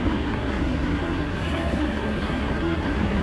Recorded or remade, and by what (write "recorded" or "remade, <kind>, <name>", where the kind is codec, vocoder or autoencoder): remade, codec, SNAC